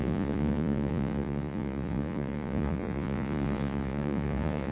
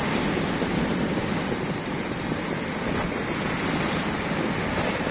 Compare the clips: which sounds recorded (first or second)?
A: second